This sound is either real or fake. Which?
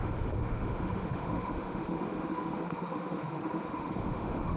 fake